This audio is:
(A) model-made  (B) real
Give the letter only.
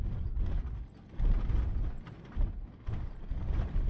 B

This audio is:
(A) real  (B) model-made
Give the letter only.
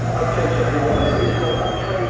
A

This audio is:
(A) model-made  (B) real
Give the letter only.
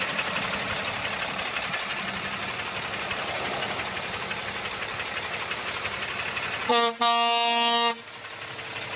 B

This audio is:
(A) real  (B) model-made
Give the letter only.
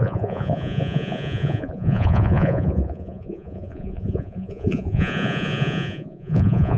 B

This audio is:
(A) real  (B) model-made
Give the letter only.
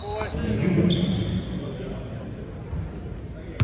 A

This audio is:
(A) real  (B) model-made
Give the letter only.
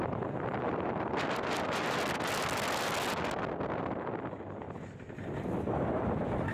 A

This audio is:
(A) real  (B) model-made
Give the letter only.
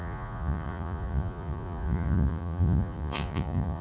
B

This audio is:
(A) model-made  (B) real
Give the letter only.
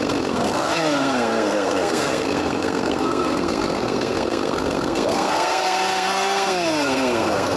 A